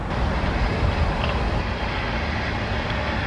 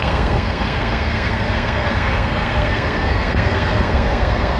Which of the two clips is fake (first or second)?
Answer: second